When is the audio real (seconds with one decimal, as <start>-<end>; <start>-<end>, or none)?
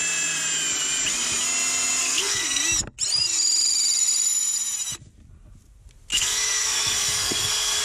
0.0-2.0; 2.6-6.1